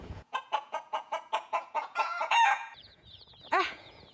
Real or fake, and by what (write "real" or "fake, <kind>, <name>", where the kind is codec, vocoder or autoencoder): fake, vocoder, Vocos